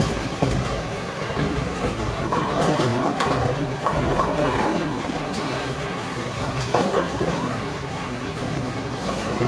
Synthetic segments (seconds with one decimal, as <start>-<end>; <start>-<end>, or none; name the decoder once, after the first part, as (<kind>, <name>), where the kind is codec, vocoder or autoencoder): 0.0-9.5 (codec, SNAC)